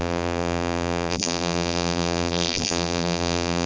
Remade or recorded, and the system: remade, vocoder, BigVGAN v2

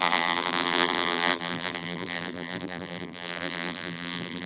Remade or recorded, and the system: remade, vocoder, BigVGAN v2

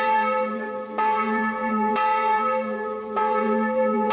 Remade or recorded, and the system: remade, vocoder, BigVGAN v2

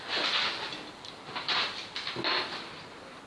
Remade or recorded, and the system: recorded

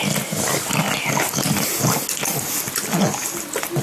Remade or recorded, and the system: recorded